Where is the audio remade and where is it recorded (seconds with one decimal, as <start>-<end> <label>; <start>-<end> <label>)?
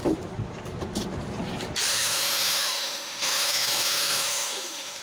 0.0-1.9 recorded; 1.9-5.0 remade